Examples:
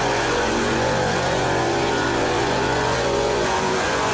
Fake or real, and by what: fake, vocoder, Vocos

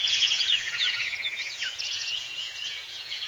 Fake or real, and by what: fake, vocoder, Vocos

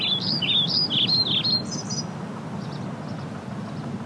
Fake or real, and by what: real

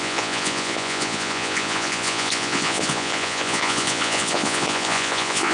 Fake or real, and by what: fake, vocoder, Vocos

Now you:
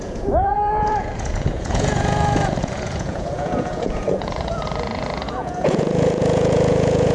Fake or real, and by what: fake, vocoder, Vocos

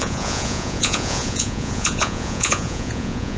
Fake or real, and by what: fake, vocoder, Vocos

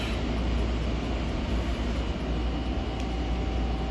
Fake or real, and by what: real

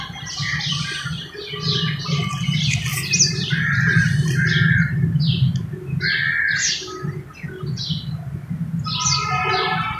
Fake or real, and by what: real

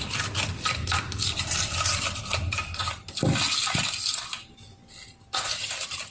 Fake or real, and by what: real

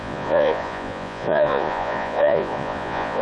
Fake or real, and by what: fake, vocoder, Vocos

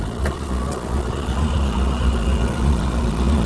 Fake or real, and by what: fake, vocoder, Vocos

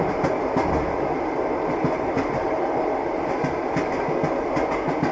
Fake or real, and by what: real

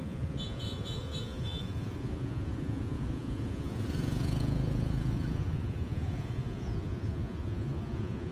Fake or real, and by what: fake, vocoder, Vocos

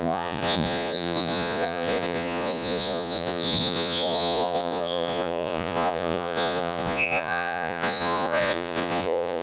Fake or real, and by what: fake, vocoder, Vocos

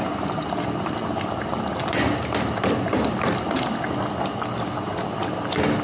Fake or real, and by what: real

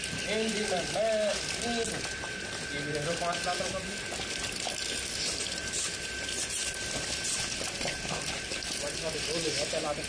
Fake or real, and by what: real